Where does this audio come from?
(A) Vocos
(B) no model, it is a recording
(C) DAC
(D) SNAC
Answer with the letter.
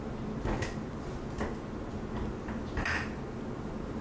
B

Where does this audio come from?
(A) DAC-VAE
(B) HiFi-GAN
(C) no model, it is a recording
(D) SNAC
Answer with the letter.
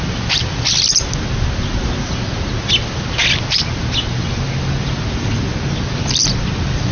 C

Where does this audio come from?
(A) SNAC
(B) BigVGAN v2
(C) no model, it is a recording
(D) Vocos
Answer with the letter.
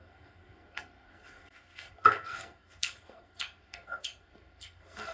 A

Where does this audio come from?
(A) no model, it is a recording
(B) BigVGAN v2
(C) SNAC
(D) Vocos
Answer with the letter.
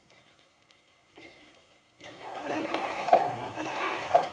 C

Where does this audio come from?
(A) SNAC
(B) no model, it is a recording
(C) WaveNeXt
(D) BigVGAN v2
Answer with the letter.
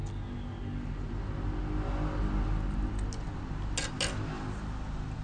B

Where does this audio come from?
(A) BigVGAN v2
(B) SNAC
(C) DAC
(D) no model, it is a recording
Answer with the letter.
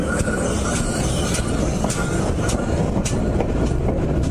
D